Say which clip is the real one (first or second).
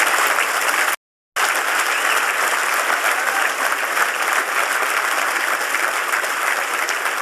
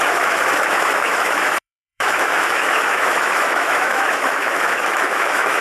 first